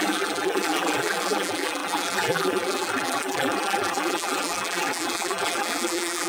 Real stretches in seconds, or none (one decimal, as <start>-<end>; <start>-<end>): none